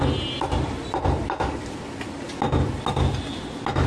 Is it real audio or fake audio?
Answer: real